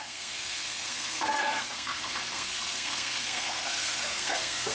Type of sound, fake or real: fake